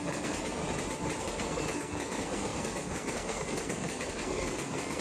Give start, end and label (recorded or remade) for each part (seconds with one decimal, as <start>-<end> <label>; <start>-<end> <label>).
0.0-0.6 remade; 0.6-1.2 recorded; 1.2-5.0 remade